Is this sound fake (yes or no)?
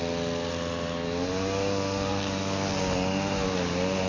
no